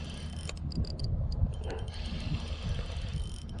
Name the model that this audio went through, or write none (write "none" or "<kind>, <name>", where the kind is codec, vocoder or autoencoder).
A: none